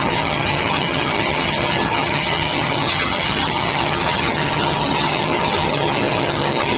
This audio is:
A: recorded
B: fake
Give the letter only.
B